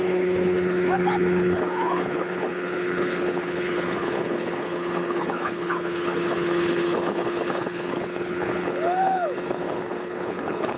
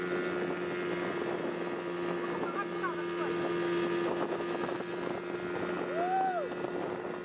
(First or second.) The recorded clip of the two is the second